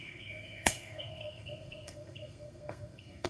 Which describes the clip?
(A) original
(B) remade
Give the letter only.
B